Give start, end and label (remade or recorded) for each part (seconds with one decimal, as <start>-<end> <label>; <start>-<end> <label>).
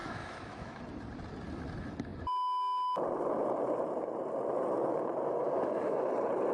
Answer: 0.0-0.8 remade; 0.8-5.4 recorded; 5.4-6.0 remade; 6.0-6.5 recorded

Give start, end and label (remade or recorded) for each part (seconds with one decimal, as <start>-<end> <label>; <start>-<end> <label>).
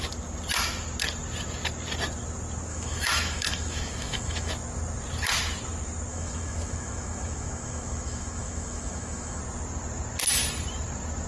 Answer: 0.0-2.7 recorded; 2.7-4.5 remade; 4.5-6.1 recorded; 6.1-9.4 remade; 9.4-11.3 recorded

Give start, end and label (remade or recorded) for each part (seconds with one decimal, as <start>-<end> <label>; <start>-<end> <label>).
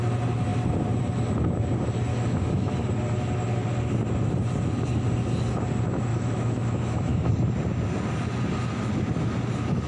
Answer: 0.0-2.1 recorded; 2.1-2.8 remade; 2.8-6.1 recorded; 6.1-7.3 remade; 7.3-9.9 recorded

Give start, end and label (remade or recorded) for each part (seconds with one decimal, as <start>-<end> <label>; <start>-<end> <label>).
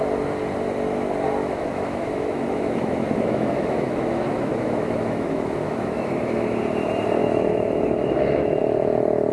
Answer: 0.0-1.4 recorded; 1.4-6.6 remade; 6.6-7.2 recorded; 7.2-8.6 remade; 8.6-9.3 recorded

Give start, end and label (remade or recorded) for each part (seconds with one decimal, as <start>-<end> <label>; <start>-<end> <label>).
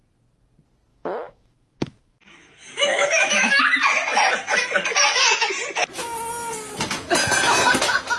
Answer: 0.0-0.9 recorded; 0.9-3.6 remade; 3.6-8.2 recorded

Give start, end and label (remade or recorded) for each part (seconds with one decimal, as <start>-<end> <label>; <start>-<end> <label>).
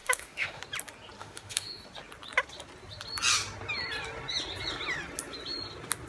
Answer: 0.0-0.6 remade; 0.6-1.2 recorded; 1.2-1.8 remade; 1.8-6.1 recorded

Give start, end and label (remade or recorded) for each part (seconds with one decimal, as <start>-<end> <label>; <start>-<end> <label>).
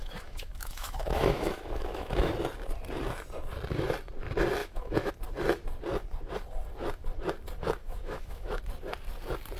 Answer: 0.0-2.3 remade; 2.3-4.6 recorded; 4.6-5.1 remade; 5.1-7.8 recorded; 7.8-8.6 remade; 8.6-9.6 recorded